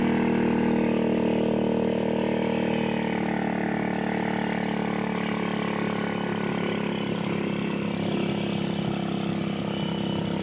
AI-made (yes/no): no